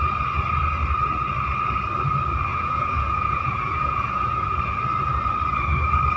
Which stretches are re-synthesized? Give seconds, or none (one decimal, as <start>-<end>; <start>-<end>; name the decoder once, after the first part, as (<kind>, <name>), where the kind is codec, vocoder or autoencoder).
2.5-4.6 (vocoder, Vocos)